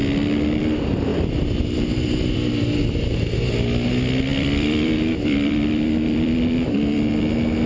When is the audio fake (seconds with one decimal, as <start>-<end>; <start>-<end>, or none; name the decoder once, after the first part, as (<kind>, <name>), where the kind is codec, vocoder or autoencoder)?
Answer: 1.1-2.8 (vocoder, BigVGAN v2); 4.3-7.3